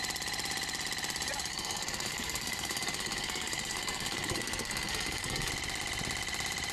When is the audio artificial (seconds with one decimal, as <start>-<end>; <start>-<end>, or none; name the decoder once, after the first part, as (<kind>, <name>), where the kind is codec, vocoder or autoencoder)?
1.5-5.5 (codec, SNAC)